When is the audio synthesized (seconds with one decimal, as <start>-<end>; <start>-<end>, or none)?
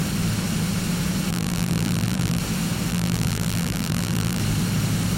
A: 1.3-2.4; 2.9-4.4